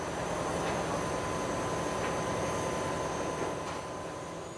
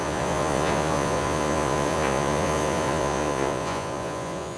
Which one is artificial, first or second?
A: second